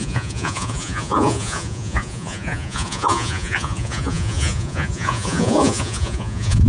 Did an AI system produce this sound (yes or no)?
yes